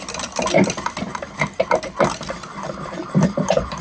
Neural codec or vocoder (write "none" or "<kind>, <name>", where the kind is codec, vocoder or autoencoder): none